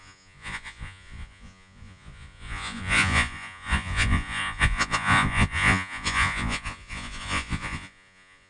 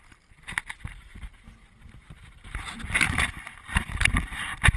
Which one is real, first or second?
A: second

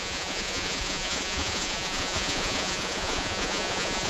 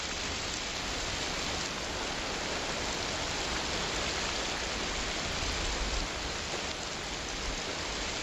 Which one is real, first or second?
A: second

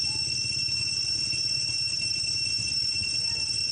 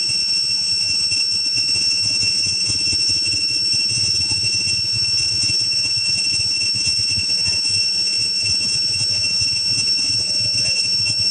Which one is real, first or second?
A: first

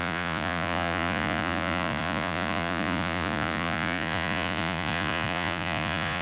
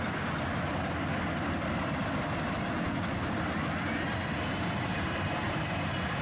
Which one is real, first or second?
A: second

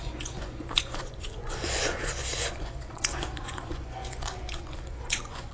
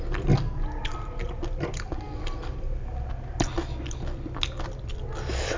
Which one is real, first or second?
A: second